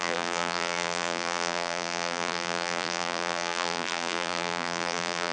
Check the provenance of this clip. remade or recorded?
remade